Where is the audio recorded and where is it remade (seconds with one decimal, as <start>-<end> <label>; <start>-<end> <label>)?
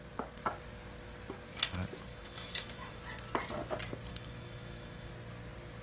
0.0-2.1 recorded; 2.1-3.0 remade; 3.0-4.1 recorded; 4.1-5.1 remade; 5.1-5.8 recorded